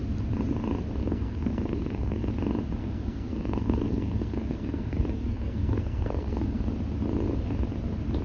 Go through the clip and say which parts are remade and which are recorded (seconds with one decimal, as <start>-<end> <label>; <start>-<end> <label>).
0.0-1.0 recorded; 1.0-2.3 remade; 2.3-2.8 recorded; 2.8-6.6 remade; 6.6-8.2 recorded